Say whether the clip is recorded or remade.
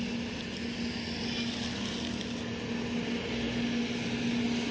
recorded